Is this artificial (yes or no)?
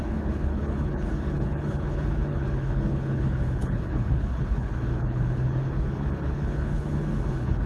yes